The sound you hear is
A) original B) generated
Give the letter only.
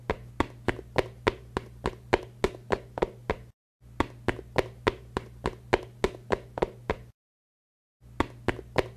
A